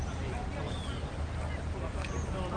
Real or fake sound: real